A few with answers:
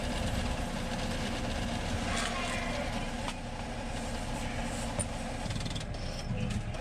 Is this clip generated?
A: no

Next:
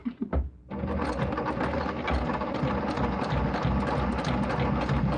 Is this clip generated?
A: no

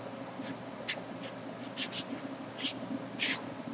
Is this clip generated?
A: no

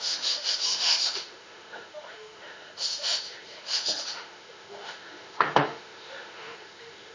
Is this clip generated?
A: yes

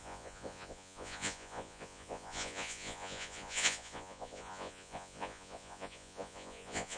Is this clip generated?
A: yes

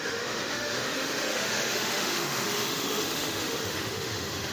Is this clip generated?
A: yes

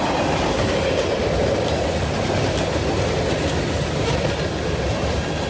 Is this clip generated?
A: no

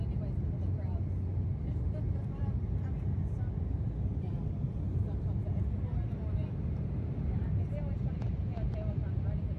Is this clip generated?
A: no